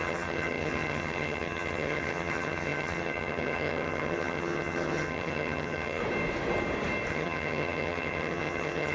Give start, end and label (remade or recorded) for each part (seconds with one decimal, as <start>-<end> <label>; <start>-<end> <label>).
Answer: 0.0-6.0 remade; 6.0-7.1 recorded; 7.1-8.9 remade